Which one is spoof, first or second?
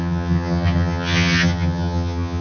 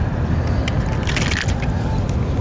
first